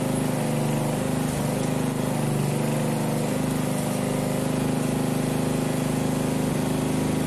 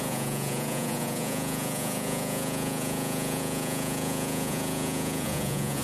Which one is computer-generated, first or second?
second